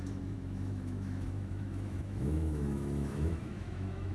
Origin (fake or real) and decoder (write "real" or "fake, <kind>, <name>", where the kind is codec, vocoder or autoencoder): fake, autoencoder, DAC-VAE